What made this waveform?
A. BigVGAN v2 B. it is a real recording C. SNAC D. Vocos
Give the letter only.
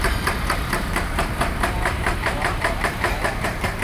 A